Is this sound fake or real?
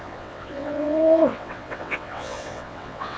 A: fake